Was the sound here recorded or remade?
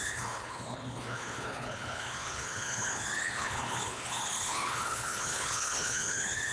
remade